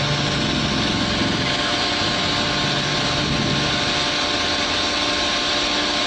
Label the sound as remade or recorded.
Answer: recorded